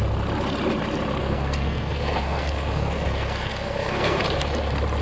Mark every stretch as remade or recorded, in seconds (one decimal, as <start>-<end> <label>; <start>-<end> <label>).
0.0-1.2 recorded; 1.2-4.2 remade; 4.2-5.0 recorded